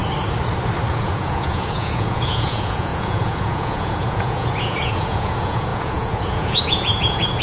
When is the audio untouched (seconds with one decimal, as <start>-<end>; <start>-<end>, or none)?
0.0-0.9